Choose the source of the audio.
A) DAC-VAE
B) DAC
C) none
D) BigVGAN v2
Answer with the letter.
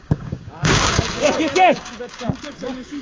B